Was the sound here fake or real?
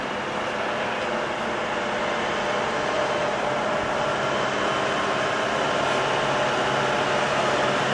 real